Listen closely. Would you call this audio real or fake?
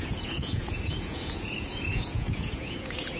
fake